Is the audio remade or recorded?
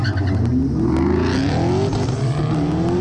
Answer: recorded